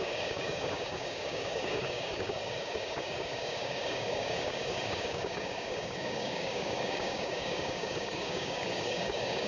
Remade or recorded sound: remade